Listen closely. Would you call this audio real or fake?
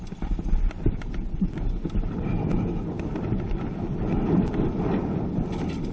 real